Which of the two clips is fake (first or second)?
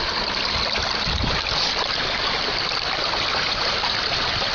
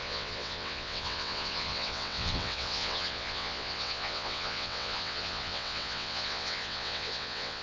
second